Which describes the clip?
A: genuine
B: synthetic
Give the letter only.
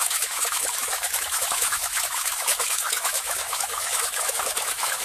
B